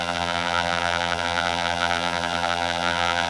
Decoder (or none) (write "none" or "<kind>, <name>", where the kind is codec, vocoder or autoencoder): vocoder, BigVGAN v2